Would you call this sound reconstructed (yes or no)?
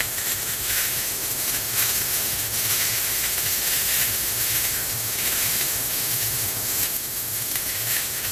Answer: yes